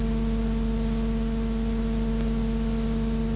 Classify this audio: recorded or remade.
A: recorded